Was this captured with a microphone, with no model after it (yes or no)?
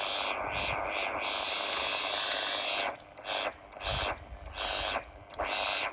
yes